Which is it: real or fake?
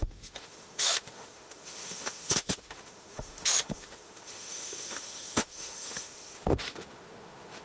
fake